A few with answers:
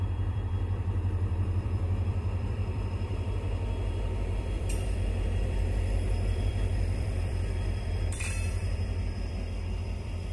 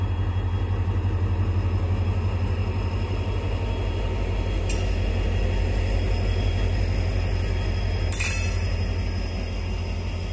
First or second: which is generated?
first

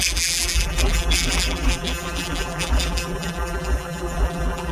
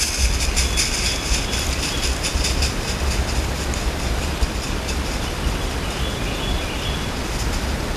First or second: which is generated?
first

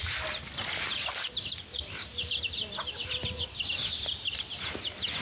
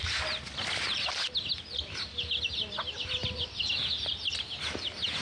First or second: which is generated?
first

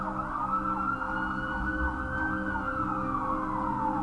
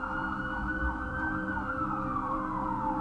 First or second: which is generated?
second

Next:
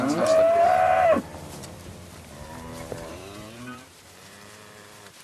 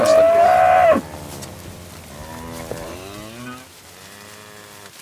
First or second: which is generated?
first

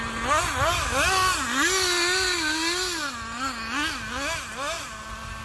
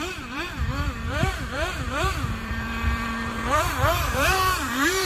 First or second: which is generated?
second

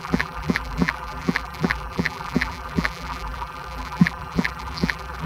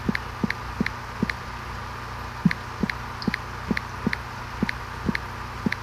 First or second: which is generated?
first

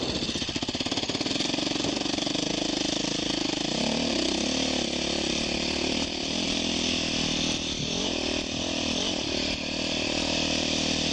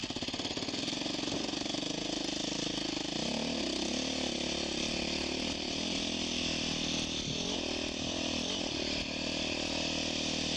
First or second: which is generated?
first